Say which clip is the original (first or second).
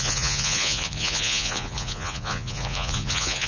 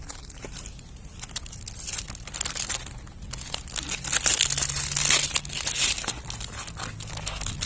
second